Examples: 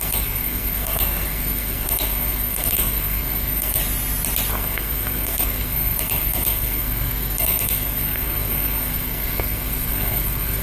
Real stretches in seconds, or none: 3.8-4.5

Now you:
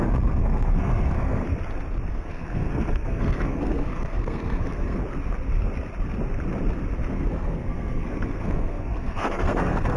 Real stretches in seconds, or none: 1.4-2.1; 5.0-7.1

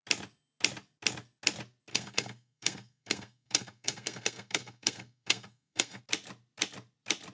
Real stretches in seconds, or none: 0.0-1.9; 6.0-7.3

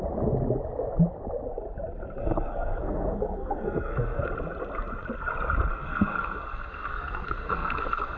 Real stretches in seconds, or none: 0.0-2.2; 4.2-5.7

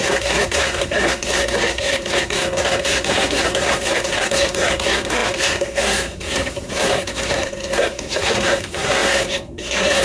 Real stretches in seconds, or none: none

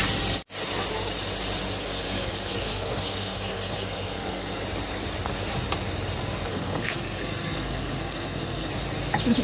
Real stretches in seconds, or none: 0.0-1.8; 4.6-6.5; 8.7-9.4

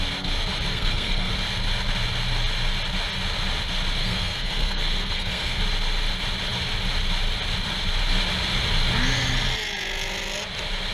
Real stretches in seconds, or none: 0.0-0.7; 1.3-4.0; 5.6-10.9

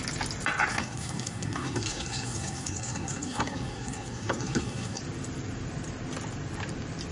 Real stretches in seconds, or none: 0.0-0.7; 5.0-7.1